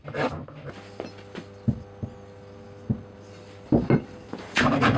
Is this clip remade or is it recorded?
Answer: recorded